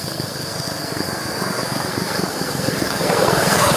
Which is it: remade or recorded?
remade